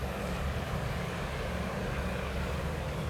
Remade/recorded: remade